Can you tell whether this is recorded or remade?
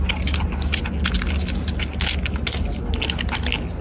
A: recorded